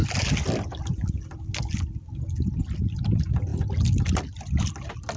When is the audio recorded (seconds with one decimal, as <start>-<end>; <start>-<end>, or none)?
0.0-5.2

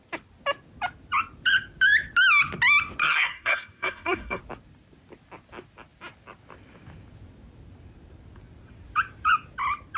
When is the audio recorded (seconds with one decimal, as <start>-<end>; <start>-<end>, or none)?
0.0-3.0; 4.4-10.0